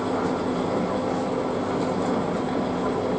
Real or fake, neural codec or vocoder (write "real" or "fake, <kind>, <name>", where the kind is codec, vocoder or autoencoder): real